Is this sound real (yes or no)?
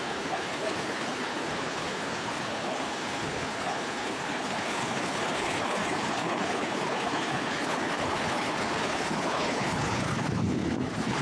no